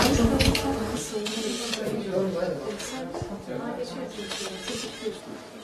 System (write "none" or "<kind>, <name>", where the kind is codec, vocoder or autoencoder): none